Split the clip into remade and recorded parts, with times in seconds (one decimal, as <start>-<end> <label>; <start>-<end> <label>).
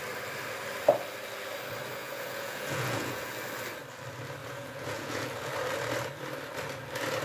0.0-1.9 recorded; 1.9-3.3 remade; 3.3-4.4 recorded; 4.4-5.5 remade; 5.5-7.2 recorded